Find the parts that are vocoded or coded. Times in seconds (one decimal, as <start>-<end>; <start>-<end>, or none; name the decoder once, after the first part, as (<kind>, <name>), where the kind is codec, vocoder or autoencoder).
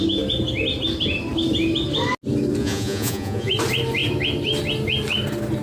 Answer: 2.6-3.5 (vocoder, Vocos)